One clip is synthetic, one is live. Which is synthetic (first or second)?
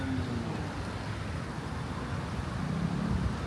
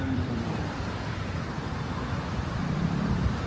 second